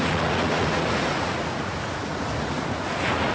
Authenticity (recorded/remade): remade